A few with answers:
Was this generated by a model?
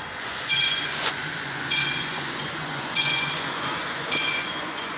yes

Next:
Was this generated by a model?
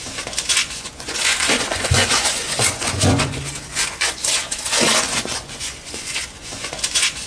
yes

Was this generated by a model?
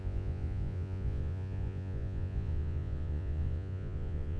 yes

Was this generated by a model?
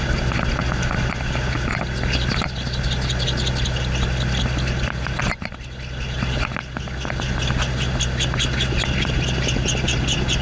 no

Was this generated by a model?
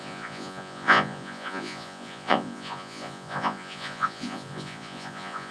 yes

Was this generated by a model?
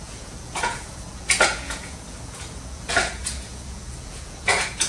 yes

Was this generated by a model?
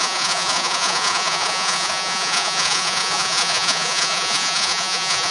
yes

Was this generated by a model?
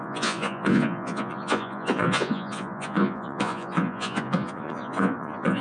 yes